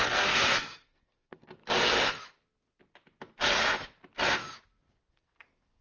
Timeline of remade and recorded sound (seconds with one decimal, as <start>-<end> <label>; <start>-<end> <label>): 0.0-1.6 remade; 1.6-5.1 recorded; 5.1-5.8 remade